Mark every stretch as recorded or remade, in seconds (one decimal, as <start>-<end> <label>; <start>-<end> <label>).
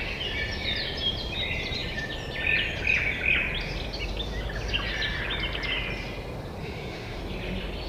0.0-6.6 recorded; 6.6-7.2 remade; 7.2-7.9 recorded